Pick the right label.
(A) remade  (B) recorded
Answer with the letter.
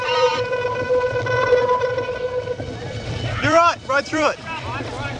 A